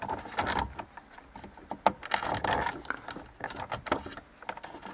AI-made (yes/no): no